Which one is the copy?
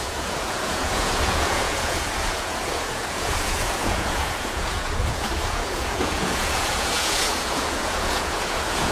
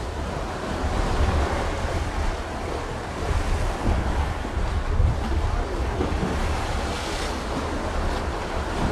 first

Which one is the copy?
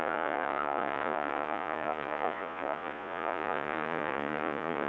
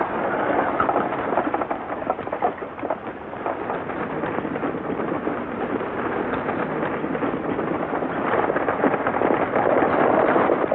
first